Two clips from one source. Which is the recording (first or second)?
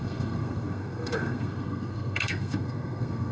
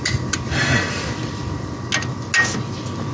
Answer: second